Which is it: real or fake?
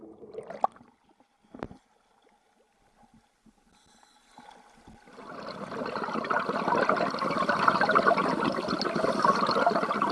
real